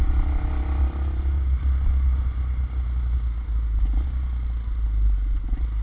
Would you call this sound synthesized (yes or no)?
no